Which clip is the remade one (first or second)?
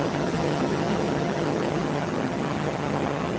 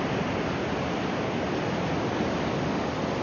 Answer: first